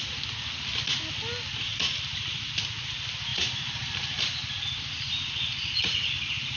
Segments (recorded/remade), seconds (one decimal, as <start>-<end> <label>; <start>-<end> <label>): 0.0-1.7 recorded; 1.7-2.5 remade; 2.5-3.3 recorded; 3.3-4.2 remade; 4.2-6.6 recorded